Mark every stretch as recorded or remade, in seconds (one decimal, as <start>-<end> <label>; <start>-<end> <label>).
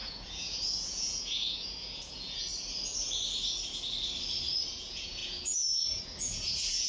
0.0-2.5 remade; 2.5-4.7 recorded; 4.7-6.9 remade